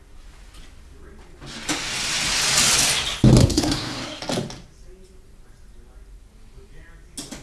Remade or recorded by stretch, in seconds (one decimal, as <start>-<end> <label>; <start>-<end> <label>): 0.0-3.4 recorded; 3.4-4.2 remade; 4.2-7.4 recorded